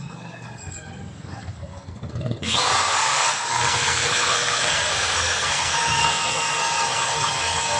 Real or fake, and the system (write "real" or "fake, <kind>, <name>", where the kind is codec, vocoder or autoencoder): fake, codec, SNAC